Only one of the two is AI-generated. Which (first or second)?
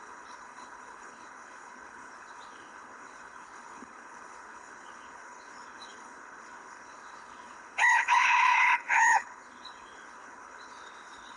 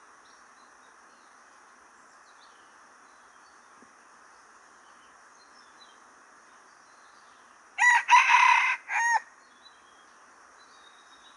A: first